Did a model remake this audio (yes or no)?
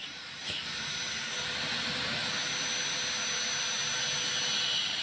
no